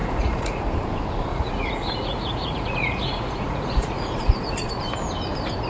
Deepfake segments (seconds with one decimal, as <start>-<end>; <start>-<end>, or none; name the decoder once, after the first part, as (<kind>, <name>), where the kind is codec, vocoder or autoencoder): 0.0-0.6 (vocoder, Vocos); 1.3-4.7